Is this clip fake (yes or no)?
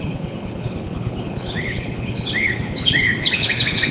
yes